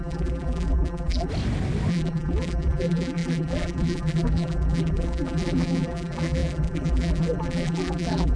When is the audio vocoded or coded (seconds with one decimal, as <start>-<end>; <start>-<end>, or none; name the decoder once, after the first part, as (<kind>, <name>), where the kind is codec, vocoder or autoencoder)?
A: 0.0-1.3 (vocoder, BigVGAN v2); 1.9-8.4